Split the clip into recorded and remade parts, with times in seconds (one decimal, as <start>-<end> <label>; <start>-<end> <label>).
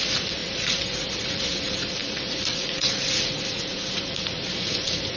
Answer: 0.0-5.2 remade